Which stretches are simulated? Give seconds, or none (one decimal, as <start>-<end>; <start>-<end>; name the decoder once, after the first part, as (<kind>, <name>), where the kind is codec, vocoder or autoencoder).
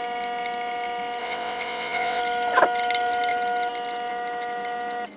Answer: 1.2-2.2 (vocoder, WaveNeXt)